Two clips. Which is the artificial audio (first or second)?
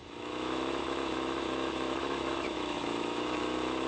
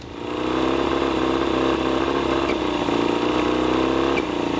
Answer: first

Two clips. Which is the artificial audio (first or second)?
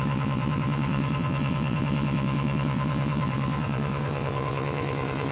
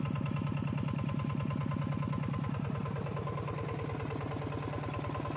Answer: first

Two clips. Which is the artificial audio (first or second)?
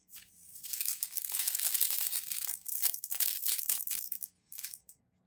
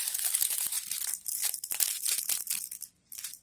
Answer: first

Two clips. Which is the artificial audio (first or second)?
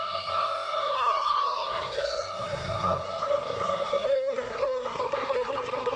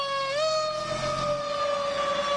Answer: first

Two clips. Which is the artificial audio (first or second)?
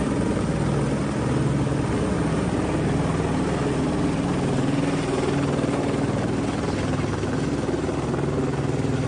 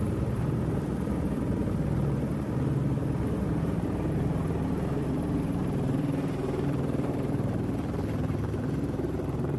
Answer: second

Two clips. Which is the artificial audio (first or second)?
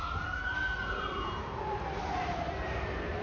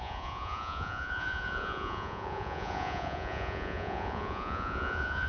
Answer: second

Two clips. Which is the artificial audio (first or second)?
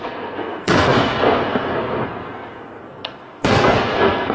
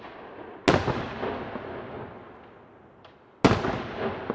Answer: first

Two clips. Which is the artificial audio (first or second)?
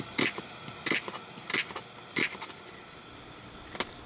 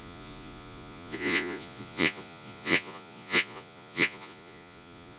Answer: second